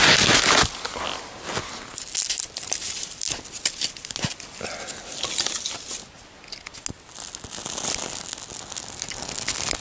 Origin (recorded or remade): recorded